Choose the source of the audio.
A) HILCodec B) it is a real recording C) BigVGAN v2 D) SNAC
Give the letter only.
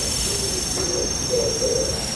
C